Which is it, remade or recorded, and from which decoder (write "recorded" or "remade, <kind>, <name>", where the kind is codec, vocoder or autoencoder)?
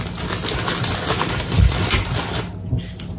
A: recorded